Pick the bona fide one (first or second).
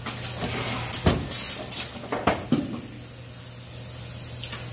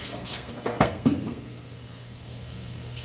first